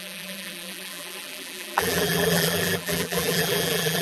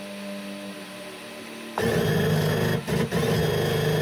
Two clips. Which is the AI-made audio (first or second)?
first